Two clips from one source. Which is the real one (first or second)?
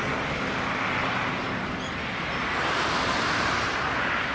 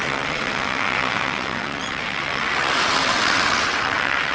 first